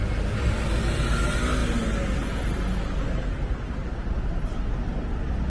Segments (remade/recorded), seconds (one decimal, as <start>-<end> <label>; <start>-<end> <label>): 0.0-5.5 recorded